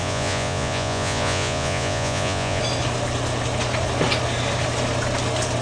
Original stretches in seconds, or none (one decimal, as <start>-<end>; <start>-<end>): 2.6-5.6